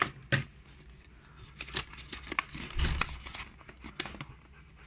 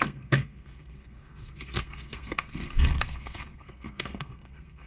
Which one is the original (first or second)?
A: first